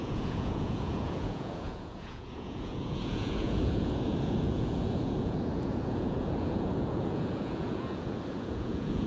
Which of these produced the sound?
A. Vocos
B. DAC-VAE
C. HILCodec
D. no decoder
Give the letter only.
A